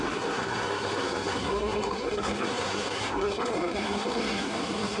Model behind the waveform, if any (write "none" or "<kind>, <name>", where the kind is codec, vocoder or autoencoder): codec, SNAC